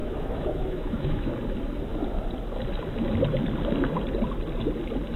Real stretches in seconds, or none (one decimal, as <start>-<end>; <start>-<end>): 1.3-5.2